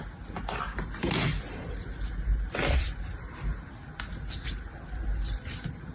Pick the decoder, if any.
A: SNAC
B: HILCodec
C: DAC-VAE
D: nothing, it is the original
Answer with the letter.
D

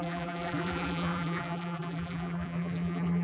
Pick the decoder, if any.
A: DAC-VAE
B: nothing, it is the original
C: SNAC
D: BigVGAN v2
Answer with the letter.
D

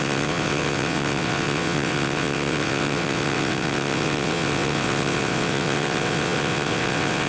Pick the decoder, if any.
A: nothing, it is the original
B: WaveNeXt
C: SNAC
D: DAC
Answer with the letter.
B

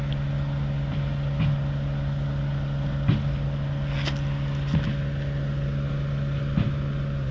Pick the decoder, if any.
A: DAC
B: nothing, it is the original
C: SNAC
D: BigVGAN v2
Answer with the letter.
B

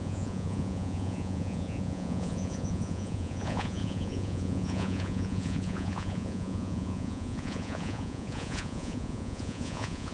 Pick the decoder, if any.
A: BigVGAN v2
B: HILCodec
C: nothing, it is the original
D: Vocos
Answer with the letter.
D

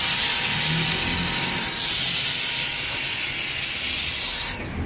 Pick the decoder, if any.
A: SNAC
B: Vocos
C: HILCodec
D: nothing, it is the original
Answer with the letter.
D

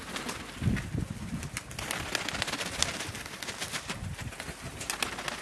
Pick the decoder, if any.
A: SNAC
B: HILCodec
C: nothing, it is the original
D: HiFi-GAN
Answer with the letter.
C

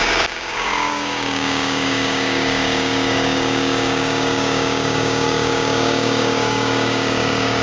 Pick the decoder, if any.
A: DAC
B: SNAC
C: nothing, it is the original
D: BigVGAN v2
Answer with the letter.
A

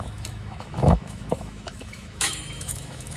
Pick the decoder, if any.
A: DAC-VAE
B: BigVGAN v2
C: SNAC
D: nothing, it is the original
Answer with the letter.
A